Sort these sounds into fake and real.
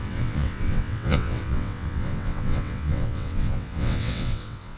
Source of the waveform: fake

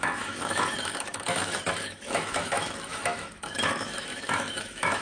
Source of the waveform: fake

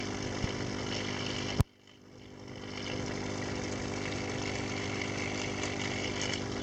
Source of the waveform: real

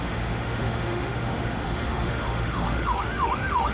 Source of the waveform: fake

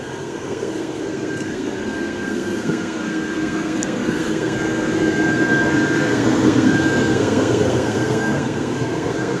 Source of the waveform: fake